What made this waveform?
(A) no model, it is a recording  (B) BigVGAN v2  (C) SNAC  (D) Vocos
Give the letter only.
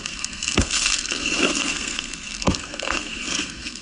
C